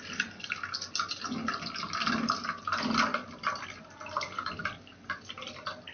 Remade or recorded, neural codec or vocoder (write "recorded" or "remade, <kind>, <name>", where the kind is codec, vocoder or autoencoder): recorded